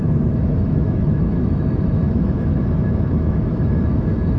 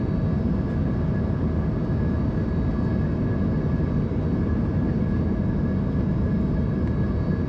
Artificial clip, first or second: first